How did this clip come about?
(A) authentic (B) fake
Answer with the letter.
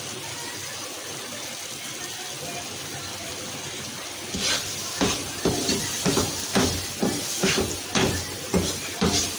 A